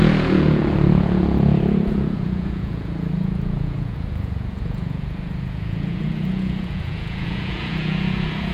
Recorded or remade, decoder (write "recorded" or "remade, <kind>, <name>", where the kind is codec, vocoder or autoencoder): remade, vocoder, Vocos